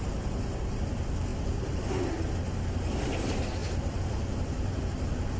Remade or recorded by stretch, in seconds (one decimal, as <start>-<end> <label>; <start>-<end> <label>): 0.0-1.3 recorded; 1.3-2.1 remade; 2.1-3.6 recorded; 3.6-4.8 remade; 4.8-5.4 recorded